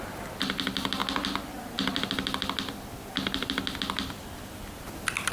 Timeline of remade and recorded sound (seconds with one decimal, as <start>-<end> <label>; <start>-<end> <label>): 0.0-5.3 recorded